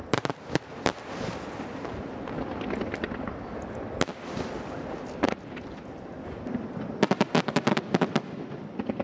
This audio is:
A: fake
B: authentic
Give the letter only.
B